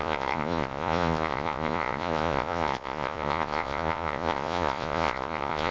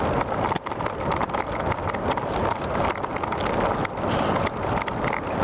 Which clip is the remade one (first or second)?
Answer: first